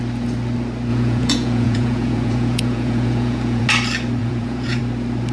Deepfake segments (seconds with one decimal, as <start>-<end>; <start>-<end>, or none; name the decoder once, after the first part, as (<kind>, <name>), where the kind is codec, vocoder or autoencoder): 0.9-3.7 (vocoder, Vocos); 4.2-4.8